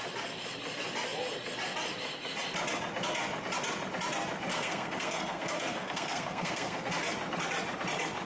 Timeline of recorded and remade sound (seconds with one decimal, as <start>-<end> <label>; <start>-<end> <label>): 0.0-4.5 recorded; 4.5-6.9 remade; 6.9-8.2 recorded